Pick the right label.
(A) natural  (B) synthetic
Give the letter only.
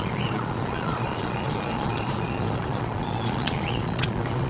B